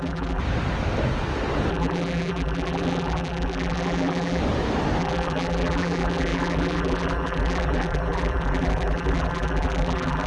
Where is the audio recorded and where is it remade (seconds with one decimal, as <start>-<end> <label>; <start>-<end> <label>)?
0.0-0.4 remade; 0.4-1.7 recorded; 1.7-4.4 remade; 4.4-5.0 recorded; 5.0-10.3 remade

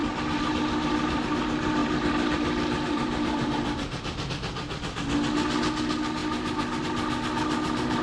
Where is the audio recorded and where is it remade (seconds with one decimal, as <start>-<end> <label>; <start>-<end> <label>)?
0.0-1.8 recorded; 1.8-4.3 remade; 4.3-8.0 recorded

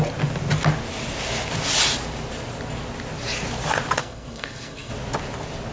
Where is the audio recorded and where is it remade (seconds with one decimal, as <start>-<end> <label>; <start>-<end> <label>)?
0.0-4.0 recorded; 4.0-4.9 remade; 4.9-5.7 recorded

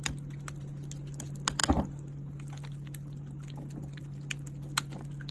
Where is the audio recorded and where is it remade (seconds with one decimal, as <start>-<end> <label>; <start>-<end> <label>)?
0.0-5.3 recorded

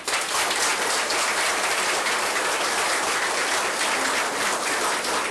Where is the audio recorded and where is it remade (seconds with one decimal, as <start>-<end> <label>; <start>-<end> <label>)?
0.0-5.3 recorded

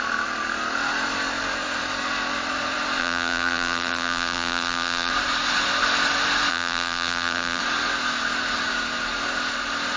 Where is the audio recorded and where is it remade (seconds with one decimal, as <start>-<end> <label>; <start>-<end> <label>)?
0.0-3.0 recorded; 3.0-5.1 remade; 5.1-6.5 recorded; 6.5-7.6 remade; 7.6-10.0 recorded